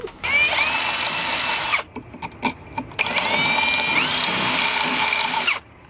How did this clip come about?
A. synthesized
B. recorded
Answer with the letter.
B